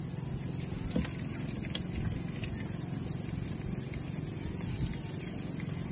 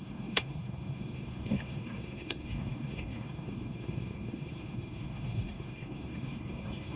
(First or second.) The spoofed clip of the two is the second